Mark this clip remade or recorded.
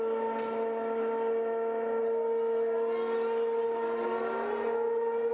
recorded